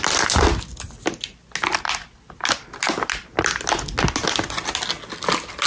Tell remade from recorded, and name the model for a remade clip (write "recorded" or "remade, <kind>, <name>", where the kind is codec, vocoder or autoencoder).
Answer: recorded